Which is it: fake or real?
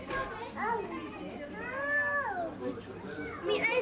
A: real